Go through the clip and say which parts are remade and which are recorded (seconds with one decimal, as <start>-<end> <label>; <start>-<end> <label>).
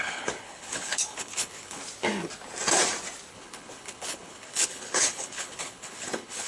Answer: 0.0-1.8 remade; 1.8-3.3 recorded; 3.3-6.5 remade